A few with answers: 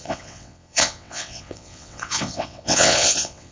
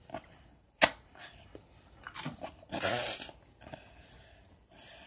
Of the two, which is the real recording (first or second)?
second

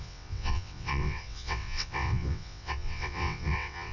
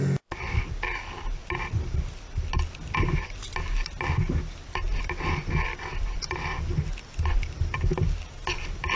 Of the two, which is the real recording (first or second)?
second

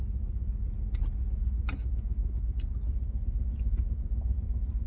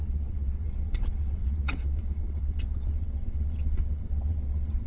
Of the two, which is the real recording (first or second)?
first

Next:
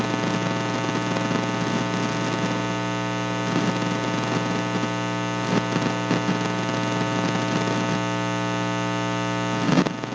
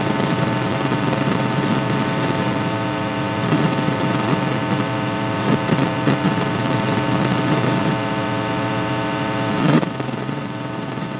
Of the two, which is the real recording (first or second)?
first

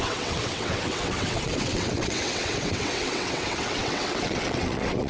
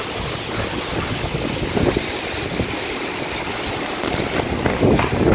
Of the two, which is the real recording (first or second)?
second